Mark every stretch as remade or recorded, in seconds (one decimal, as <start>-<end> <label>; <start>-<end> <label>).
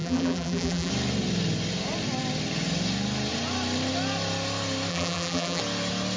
0.0-0.9 remade; 0.9-4.9 recorded; 4.9-5.6 remade; 5.6-6.2 recorded